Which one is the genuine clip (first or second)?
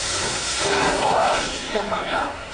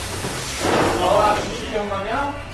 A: second